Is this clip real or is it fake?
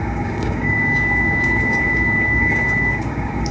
fake